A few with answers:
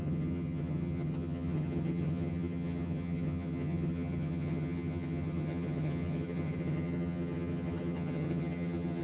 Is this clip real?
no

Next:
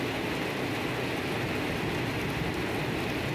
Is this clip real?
yes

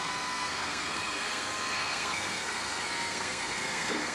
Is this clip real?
no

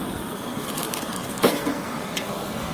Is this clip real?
no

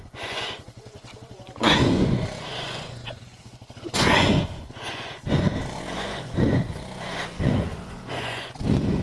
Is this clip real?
no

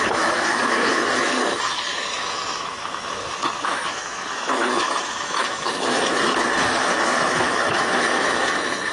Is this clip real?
no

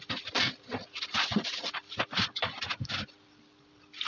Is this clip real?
no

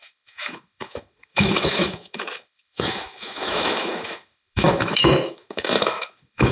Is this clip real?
no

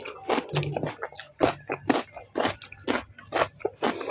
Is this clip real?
yes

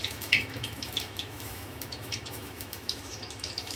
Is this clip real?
no